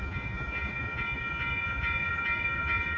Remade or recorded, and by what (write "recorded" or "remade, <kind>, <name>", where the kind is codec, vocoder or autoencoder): remade, vocoder, Vocos